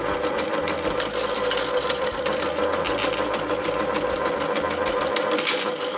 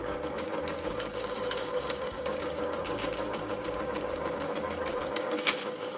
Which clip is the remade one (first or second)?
second